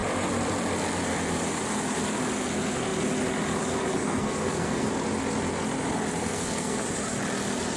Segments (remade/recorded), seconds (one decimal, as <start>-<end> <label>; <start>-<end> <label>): 0.0-3.9 recorded; 3.9-4.9 remade; 4.9-6.2 recorded; 6.2-6.8 remade; 6.8-7.8 recorded